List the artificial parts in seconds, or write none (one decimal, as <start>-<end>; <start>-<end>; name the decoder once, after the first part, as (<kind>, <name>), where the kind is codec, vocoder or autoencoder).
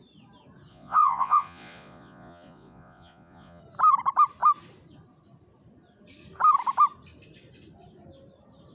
0.7-3.6 (vocoder, Vocos)